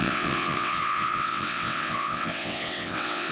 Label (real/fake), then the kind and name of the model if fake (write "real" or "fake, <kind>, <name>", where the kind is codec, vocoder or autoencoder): fake, vocoder, WaveNeXt